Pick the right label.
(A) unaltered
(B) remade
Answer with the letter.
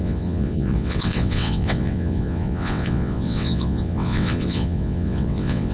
B